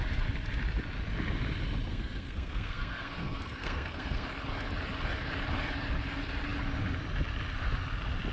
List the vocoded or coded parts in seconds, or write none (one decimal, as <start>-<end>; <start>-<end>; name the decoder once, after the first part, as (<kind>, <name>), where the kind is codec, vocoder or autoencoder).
1.9-4.3 (codec, SNAC)

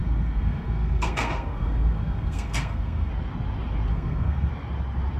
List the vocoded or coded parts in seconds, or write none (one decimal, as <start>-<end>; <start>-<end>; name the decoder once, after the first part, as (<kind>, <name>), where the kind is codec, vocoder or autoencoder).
0.0-3.1 (codec, SNAC); 3.9-4.5

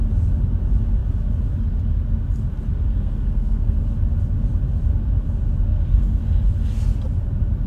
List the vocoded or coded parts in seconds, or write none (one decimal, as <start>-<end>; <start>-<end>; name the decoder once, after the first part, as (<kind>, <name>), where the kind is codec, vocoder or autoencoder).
2.7-3.8 (codec, SNAC); 5.7-6.2

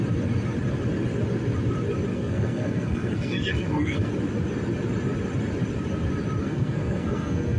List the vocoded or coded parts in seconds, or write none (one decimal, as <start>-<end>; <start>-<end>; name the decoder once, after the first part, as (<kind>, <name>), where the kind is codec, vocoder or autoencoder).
2.1-4.1 (codec, SNAC); 6.4-7.6

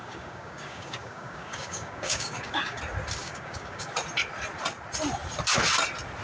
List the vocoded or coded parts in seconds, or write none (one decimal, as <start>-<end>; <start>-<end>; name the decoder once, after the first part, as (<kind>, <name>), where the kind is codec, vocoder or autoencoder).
0.0-2.8 (codec, DAC); 3.2-3.9